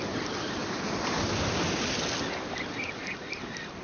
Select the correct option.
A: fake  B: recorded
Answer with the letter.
B